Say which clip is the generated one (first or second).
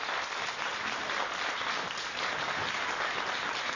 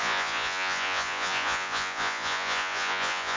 second